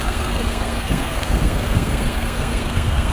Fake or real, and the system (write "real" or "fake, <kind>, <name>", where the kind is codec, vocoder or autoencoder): fake, codec, SNAC